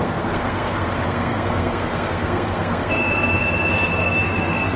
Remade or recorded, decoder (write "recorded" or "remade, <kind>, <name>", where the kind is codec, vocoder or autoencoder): remade, codec, SNAC